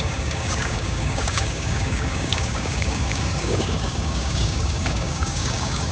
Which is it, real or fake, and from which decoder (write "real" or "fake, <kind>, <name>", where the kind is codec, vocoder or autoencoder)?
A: fake, codec, DAC